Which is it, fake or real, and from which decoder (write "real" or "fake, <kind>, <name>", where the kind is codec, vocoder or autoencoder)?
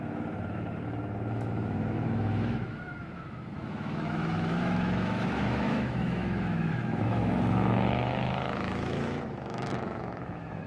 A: fake, autoencoder, DAC-VAE